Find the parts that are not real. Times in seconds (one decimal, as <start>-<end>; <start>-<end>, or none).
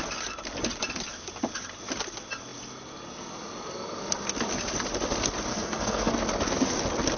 5.5-6.1